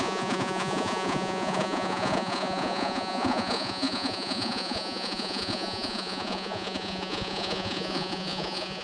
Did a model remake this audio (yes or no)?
yes